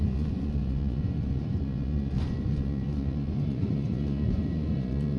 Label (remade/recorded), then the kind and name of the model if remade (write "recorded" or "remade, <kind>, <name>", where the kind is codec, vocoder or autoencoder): remade, vocoder, Vocos